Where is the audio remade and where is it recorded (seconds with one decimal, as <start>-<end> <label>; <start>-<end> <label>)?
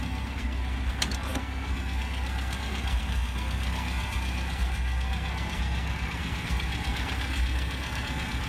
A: 0.0-8.5 remade